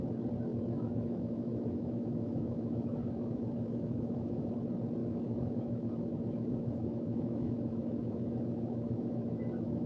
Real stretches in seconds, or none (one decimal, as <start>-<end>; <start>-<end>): 0.0-0.5; 4.5-5.0